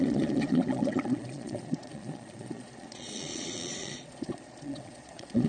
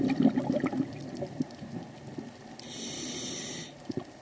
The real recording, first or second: second